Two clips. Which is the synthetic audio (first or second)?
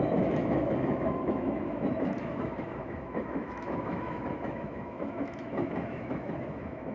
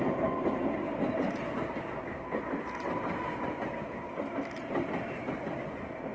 first